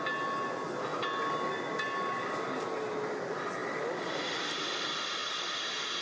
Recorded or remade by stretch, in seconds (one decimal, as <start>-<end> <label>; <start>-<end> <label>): 0.0-6.0 recorded